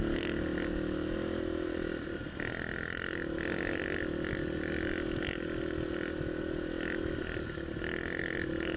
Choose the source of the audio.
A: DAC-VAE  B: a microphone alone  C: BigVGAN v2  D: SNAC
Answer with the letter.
B